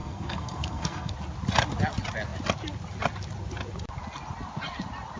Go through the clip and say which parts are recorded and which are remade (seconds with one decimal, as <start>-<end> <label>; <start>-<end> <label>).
0.0-1.1 remade; 1.1-5.2 recorded